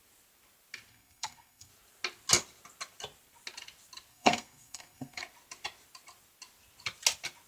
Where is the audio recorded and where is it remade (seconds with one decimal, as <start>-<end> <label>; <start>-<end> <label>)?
0.0-0.9 recorded; 0.9-1.7 remade; 1.7-4.1 recorded; 4.1-5.2 remade; 5.2-7.5 recorded